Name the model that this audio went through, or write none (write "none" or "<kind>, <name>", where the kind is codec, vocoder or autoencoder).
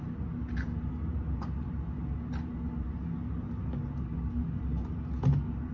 none